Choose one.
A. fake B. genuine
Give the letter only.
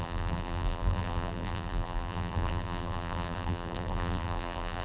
A